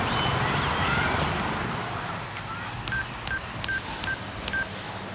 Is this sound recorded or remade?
recorded